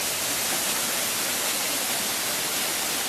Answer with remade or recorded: recorded